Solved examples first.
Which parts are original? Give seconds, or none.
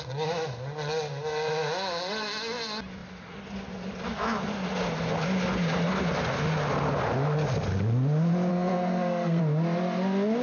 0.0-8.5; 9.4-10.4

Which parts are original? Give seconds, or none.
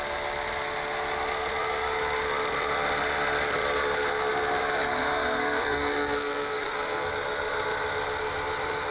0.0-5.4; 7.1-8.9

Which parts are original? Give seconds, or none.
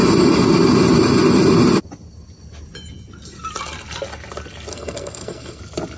0.0-4.7; 5.6-6.0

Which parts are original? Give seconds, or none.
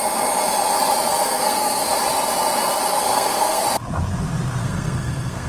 0.0-1.1; 1.8-2.9; 3.6-4.6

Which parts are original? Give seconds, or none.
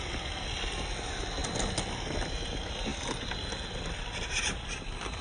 0.0-5.2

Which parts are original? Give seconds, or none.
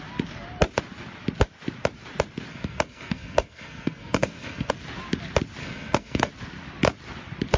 0.0-2.5; 4.7-5.6; 6.3-7.6